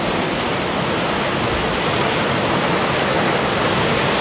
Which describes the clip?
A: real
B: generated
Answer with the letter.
A